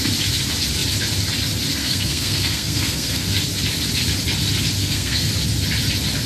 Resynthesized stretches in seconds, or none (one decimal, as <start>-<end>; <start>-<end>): 1.8-3.4; 4.8-5.3